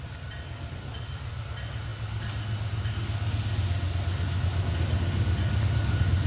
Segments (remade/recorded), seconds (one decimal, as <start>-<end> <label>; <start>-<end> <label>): 0.0-6.3 recorded